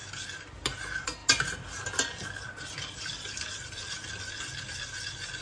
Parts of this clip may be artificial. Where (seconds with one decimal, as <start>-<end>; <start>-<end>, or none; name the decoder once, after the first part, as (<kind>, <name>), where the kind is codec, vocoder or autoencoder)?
none